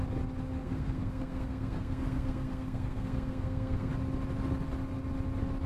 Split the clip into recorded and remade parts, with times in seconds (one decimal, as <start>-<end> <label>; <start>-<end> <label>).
0.0-0.6 recorded; 0.6-3.9 remade; 3.9-5.7 recorded

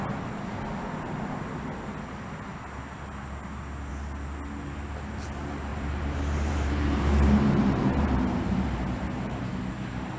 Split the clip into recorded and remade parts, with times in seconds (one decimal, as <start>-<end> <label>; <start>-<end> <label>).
0.0-5.7 recorded; 5.7-9.6 remade; 9.6-10.2 recorded